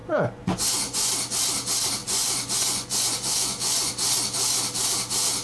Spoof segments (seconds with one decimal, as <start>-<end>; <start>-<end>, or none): 0.0-1.1; 2.0-3.9